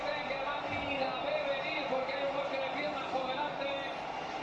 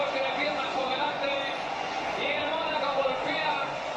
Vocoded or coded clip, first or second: second